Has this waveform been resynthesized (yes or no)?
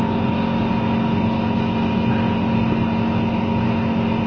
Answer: no